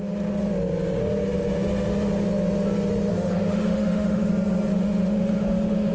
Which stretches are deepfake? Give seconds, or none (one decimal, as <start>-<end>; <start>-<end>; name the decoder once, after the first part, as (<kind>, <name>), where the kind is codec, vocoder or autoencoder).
3.1-4.3 (autoencoder, DAC-VAE); 4.7-5.9